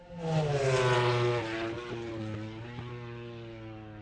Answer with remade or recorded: recorded